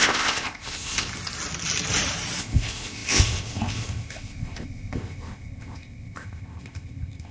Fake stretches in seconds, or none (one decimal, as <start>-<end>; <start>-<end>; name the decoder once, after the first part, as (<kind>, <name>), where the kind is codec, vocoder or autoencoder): 0.0-1.1 (codec, ZipCodec); 2.4-7.3